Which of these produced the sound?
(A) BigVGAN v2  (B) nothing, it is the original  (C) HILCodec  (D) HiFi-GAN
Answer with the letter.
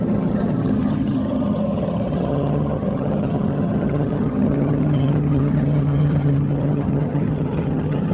D